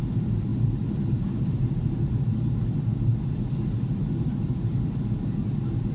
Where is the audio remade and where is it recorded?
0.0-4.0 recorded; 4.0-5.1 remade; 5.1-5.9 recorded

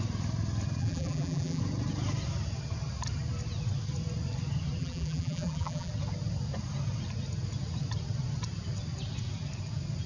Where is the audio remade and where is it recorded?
0.0-0.8 recorded; 0.8-1.6 remade; 1.6-4.8 recorded; 4.8-5.9 remade; 5.9-10.1 recorded

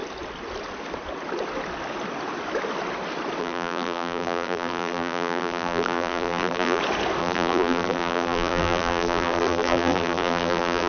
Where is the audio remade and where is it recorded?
0.0-3.4 recorded; 3.4-6.8 remade; 6.8-7.2 recorded; 7.2-10.9 remade

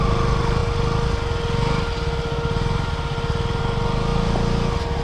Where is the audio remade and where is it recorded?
0.0-5.0 recorded

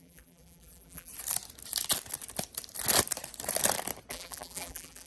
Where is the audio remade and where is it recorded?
0.0-1.1 remade; 1.1-4.1 recorded; 4.1-5.1 remade